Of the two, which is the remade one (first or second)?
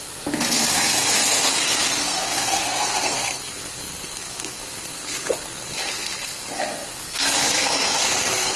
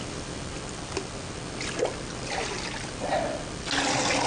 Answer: first